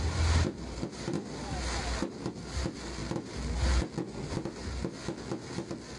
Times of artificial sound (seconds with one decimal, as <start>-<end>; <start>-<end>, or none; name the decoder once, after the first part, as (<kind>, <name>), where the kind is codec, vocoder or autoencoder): 0.0-3.0 (vocoder, BigVGAN v2)